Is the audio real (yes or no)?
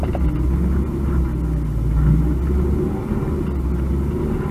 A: yes